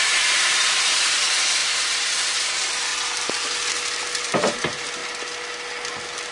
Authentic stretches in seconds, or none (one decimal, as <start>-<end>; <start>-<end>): 2.9-4.2; 5.0-6.3